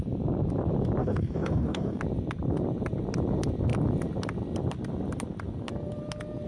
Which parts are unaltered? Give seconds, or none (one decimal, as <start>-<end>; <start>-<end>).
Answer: 0.0-1.0; 2.0-6.5